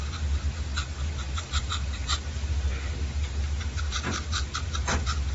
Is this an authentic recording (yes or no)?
yes